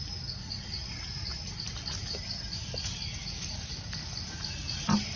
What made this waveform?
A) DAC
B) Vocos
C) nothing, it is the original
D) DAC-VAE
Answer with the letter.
C